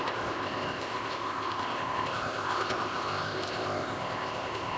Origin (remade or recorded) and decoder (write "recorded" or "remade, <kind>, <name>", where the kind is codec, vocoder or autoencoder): remade, codec, ZipCodec